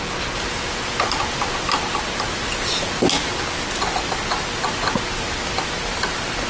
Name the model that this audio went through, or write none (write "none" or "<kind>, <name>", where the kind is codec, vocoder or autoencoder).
none